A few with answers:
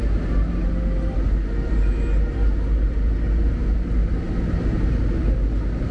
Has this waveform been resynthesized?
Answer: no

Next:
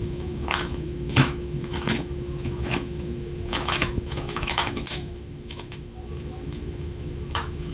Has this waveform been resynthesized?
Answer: yes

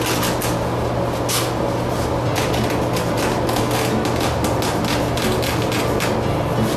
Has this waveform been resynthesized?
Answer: no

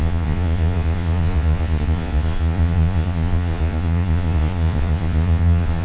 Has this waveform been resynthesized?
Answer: yes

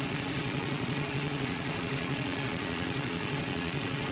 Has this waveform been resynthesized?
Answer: yes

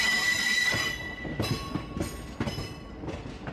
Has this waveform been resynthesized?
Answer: no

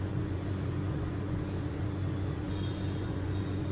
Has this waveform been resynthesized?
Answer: yes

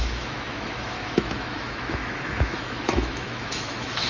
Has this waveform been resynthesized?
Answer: yes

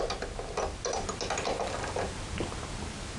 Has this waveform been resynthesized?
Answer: no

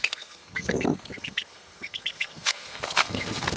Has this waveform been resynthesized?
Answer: yes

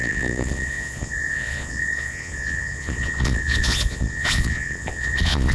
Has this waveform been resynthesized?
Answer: yes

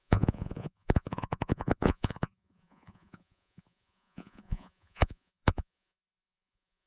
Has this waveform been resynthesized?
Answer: yes